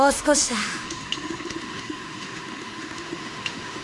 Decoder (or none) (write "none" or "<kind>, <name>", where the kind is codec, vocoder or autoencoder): autoencoder, DAC-VAE